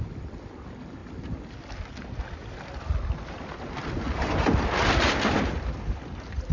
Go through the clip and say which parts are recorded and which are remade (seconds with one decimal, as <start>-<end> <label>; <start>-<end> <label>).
0.0-6.5 recorded